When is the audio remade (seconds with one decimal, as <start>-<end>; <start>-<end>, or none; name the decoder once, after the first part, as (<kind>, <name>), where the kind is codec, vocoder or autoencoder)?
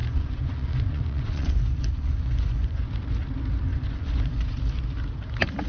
0.0-2.9 (vocoder, Vocos); 3.7-4.6